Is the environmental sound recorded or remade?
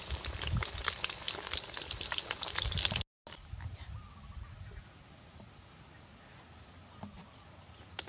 recorded